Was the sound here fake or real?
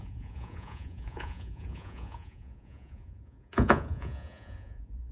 fake